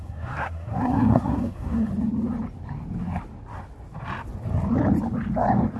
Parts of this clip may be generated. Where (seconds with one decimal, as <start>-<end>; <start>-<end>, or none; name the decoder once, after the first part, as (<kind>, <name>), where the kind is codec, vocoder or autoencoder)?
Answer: 0.0-1.9 (codec, SNAC)